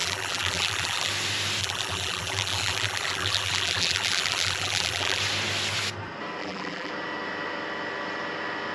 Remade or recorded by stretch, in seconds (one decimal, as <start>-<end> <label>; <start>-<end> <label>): 0.0-1.1 remade; 1.1-1.6 recorded; 1.6-5.2 remade; 5.2-6.4 recorded; 6.4-6.9 remade; 6.9-8.7 recorded